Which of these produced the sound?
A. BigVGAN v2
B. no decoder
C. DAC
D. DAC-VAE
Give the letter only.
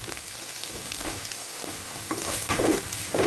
C